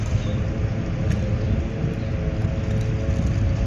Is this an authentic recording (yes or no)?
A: yes